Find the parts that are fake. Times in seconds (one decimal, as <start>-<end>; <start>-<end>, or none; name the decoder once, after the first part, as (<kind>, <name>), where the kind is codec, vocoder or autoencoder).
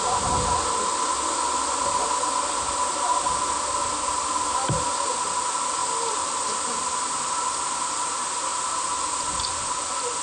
none